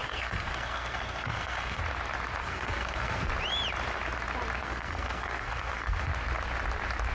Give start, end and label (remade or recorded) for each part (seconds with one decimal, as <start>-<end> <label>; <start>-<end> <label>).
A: 0.0-1.8 remade; 1.8-2.4 recorded; 2.4-3.3 remade; 3.3-4.6 recorded; 4.6-6.1 remade; 6.1-7.1 recorded

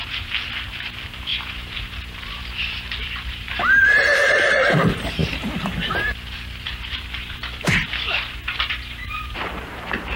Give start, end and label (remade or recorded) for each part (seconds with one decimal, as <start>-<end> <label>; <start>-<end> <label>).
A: 0.0-10.2 remade

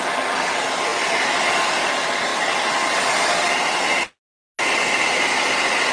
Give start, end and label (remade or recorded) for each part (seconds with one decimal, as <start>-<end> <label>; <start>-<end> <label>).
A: 0.0-5.9 recorded

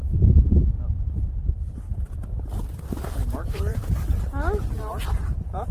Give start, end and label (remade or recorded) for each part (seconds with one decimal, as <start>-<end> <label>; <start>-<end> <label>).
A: 0.0-3.2 recorded; 3.2-4.1 remade; 4.1-5.7 recorded

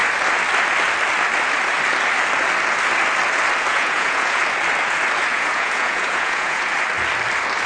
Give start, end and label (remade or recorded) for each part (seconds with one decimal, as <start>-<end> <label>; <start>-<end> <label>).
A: 0.0-3.7 recorded; 3.7-4.4 remade; 4.4-5.3 recorded; 5.3-6.7 remade; 6.7-7.7 recorded

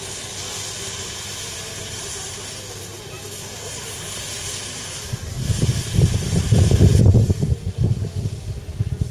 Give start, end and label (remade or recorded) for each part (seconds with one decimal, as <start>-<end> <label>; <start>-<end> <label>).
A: 0.0-9.1 recorded

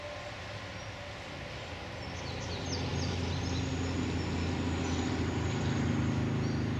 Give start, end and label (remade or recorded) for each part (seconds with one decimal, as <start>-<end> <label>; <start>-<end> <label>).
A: 0.0-6.8 recorded

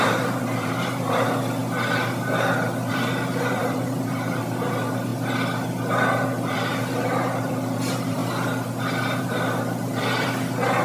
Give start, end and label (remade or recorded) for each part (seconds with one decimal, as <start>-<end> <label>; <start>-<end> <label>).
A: 0.0-1.6 remade; 1.6-2.9 recorded; 2.9-5.1 remade; 5.1-6.5 recorded; 6.5-8.2 remade; 8.2-9.2 recorded; 9.2-10.8 remade